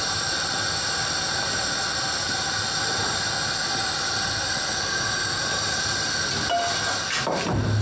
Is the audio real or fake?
real